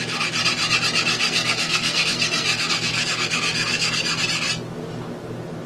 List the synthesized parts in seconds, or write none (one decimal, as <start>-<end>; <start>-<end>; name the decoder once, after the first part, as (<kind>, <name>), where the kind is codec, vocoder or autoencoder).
1.1-4.2 (codec, SNAC)